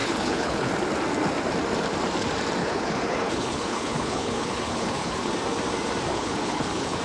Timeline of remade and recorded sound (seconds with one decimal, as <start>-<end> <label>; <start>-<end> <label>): 0.0-0.7 remade; 0.7-2.6 recorded; 2.6-5.3 remade; 5.3-6.1 recorded; 6.1-7.0 remade